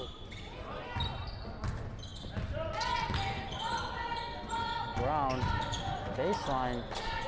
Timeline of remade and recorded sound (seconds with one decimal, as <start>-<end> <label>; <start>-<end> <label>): 0.0-7.3 recorded